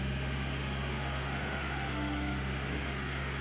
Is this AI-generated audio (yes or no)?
yes